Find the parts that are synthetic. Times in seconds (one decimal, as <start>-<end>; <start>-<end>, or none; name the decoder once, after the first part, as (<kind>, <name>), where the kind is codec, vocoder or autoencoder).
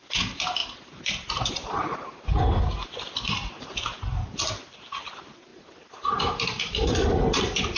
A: 0.0-7.8 (vocoder, BigVGAN v2)